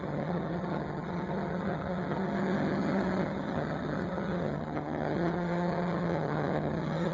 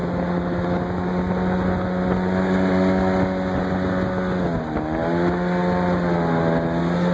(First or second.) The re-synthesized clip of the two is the first